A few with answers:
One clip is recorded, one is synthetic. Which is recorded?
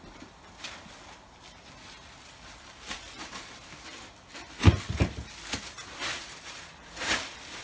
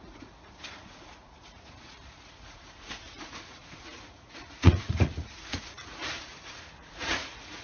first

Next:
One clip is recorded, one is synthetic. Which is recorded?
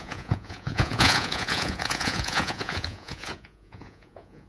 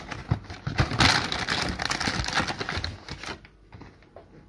second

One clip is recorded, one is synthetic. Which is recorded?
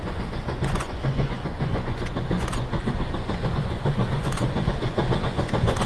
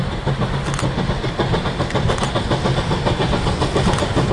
second